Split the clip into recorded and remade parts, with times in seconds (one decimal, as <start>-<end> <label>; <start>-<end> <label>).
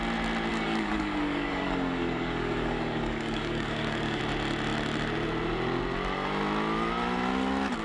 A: 0.0-0.5 recorded; 0.5-4.2 remade; 4.2-7.8 recorded